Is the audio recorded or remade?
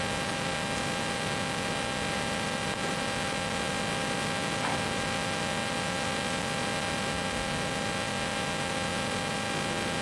recorded